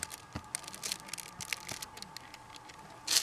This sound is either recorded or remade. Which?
recorded